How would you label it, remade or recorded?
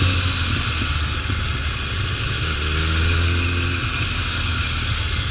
recorded